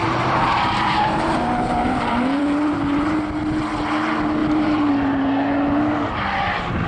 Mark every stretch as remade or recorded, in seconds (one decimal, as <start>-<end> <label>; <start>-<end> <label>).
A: 0.0-2.4 remade; 2.4-4.4 recorded; 4.4-4.9 remade; 4.9-6.9 recorded